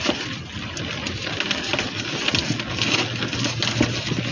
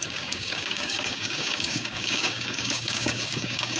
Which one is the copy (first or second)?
second